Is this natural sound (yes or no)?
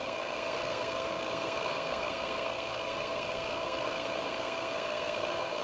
no